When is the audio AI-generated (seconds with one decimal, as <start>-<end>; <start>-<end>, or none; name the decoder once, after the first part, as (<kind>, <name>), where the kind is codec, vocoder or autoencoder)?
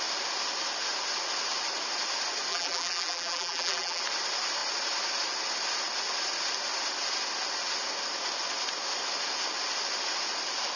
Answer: 2.5-4.0 (vocoder, BigVGAN v2)